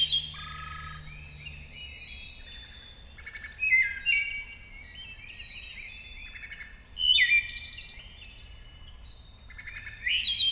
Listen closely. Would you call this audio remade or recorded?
recorded